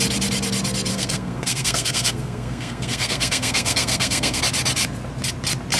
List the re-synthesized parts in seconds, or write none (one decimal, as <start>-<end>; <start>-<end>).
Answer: 0.9-4.4